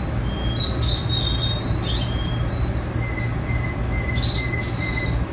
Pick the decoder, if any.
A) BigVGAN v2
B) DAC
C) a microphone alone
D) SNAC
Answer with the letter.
C